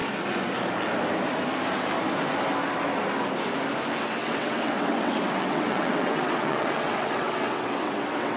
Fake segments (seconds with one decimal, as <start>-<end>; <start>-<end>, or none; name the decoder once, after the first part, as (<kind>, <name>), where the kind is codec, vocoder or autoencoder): 4.0-8.4 (vocoder, WaveNeXt)